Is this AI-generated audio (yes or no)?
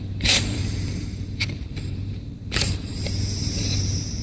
yes